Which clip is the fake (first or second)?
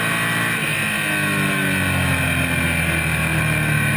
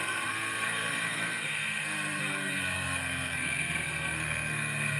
second